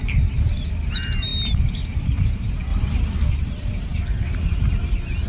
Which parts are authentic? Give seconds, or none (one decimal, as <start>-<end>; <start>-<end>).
1.3-2.0; 2.7-3.3